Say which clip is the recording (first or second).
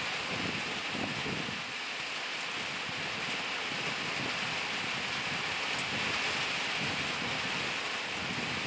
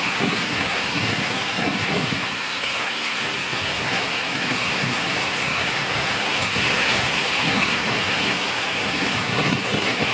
first